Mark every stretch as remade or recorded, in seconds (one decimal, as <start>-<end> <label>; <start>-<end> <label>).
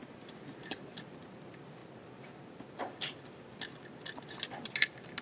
0.0-5.2 recorded